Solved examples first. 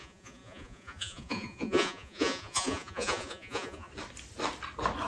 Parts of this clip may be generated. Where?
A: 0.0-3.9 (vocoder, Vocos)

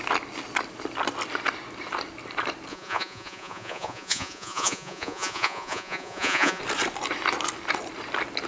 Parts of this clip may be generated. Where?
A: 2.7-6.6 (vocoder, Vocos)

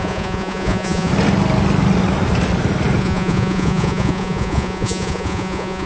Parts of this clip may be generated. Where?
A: 0.0-1.1 (vocoder, Vocos); 3.0-5.9

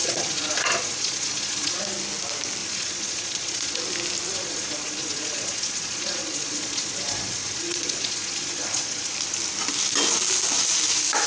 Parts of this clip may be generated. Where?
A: 0.0-1.9 (vocoder, Vocos); 2.6-3.8; 4.3-9.1